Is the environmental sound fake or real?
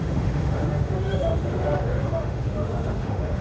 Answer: fake